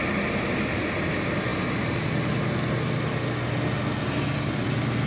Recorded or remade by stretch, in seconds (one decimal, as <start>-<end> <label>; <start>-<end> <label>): 0.0-5.1 recorded